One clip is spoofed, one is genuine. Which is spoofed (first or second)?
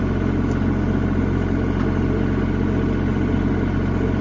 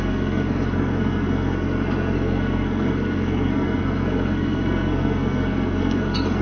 second